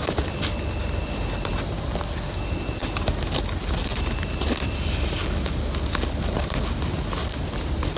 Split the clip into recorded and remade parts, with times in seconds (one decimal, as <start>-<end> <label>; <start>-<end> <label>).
0.0-8.0 recorded

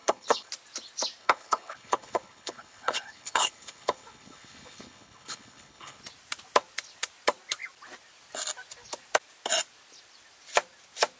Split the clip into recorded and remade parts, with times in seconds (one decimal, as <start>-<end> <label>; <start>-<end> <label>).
0.0-0.5 remade; 0.5-1.2 recorded; 1.2-6.0 remade; 6.0-11.2 recorded

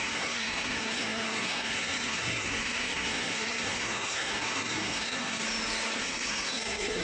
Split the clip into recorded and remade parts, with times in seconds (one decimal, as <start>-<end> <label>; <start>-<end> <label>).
0.0-5.4 remade; 5.4-6.0 recorded; 6.0-7.0 remade

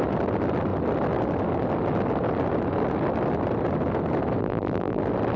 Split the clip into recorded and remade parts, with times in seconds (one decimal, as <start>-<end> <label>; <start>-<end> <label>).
0.0-4.4 recorded; 4.4-5.0 remade; 5.0-5.4 recorded

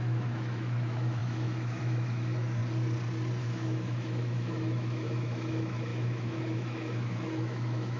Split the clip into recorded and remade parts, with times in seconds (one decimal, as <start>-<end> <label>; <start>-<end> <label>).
0.0-2.6 remade; 2.6-3.4 recorded; 3.4-8.0 remade